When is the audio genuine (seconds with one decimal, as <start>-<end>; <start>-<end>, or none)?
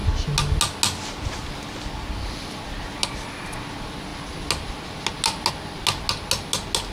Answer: 0.0-6.9